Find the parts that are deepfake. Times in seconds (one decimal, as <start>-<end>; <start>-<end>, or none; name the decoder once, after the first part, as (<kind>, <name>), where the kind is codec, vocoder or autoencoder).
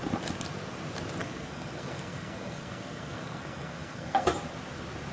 1.2-4.3 (codec, SNAC)